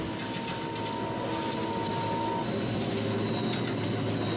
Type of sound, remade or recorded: recorded